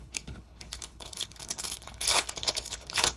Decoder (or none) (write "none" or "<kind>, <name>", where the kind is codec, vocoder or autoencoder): codec, HILCodec